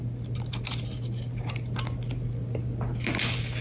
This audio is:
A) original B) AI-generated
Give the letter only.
A